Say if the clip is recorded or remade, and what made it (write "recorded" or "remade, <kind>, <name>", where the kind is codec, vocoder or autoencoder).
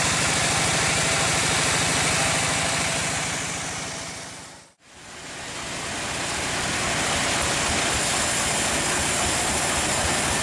recorded